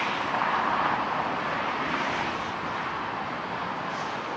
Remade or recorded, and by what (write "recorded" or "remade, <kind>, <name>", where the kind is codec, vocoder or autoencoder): recorded